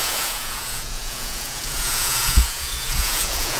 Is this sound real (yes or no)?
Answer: no